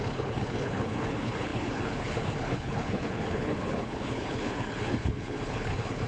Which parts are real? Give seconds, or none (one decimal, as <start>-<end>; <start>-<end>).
none